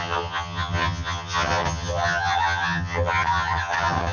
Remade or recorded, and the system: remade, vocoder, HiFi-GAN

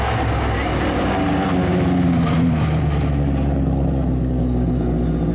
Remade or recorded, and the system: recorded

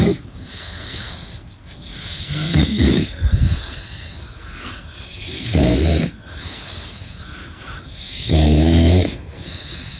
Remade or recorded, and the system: remade, codec, SNAC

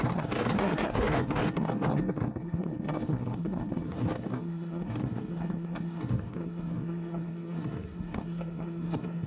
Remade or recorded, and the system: remade, codec, SNAC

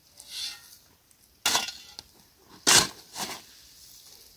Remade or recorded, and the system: recorded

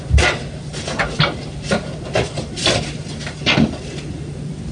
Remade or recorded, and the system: recorded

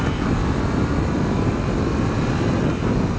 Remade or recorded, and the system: recorded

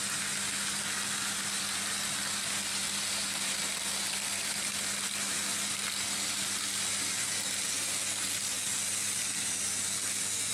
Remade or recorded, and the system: recorded